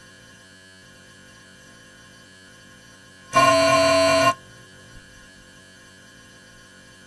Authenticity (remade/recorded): remade